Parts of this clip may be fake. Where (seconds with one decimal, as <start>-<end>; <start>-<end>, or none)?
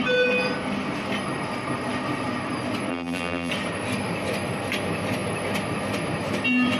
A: 2.9-3.5